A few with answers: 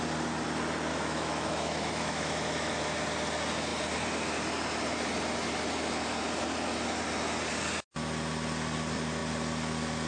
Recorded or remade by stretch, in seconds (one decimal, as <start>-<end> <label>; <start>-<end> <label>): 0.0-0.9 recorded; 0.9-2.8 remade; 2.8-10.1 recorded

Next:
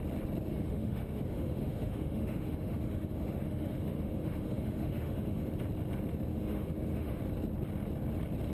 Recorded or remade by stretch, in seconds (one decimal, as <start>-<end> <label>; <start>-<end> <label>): 0.0-0.5 recorded; 0.5-5.5 remade; 5.5-6.3 recorded; 6.3-7.2 remade; 7.2-8.5 recorded

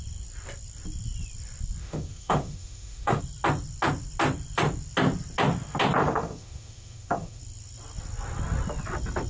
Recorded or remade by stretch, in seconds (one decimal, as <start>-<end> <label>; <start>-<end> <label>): 0.0-1.8 recorded; 1.8-3.2 remade; 3.2-6.0 recorded; 6.0-7.4 remade; 7.4-9.3 recorded